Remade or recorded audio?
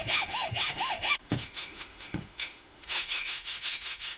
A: remade